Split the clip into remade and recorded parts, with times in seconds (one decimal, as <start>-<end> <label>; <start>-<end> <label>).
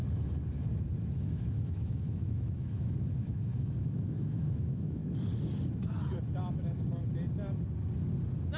0.0-1.1 recorded; 1.1-5.0 remade; 5.0-8.6 recorded